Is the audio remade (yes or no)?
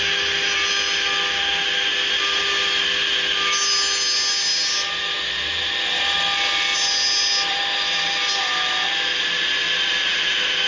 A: no